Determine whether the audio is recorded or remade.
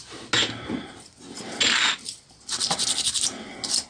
recorded